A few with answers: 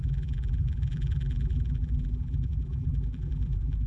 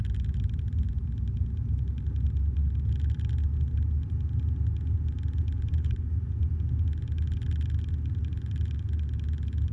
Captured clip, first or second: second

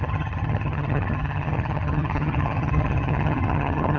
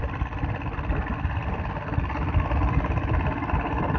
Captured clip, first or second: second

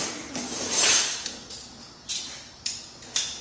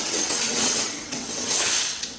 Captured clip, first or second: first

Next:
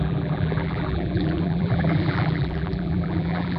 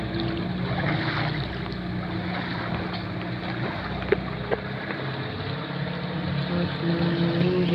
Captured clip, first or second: second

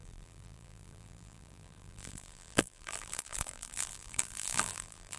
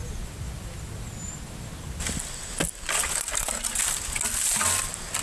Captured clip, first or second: second